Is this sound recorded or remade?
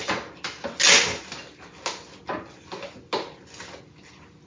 recorded